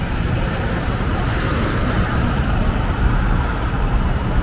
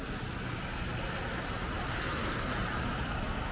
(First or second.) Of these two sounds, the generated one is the first